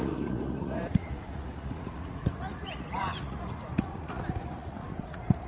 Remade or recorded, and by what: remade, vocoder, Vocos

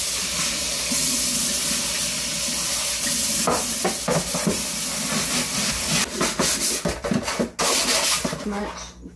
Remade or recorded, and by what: recorded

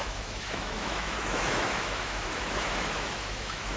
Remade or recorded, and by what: remade, autoencoder, DAC-VAE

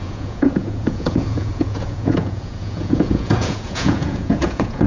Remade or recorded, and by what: remade, vocoder, Vocos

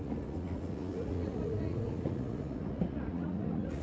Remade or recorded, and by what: remade, vocoder, Vocos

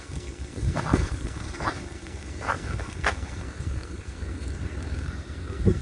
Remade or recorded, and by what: remade, codec, SNAC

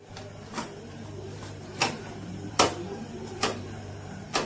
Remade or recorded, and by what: remade, vocoder, BigVGAN v2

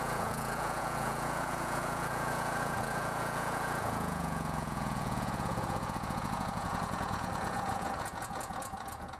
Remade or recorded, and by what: remade, vocoder, Vocos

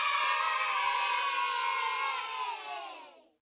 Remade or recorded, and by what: recorded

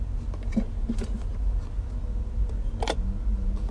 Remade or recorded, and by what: recorded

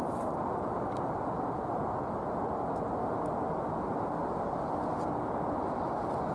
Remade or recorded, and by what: recorded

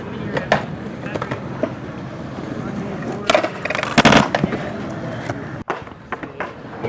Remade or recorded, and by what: recorded